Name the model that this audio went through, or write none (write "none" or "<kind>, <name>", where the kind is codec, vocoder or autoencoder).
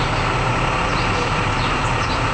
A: none